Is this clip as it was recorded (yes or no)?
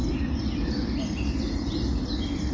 yes